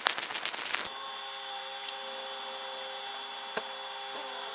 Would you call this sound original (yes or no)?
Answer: yes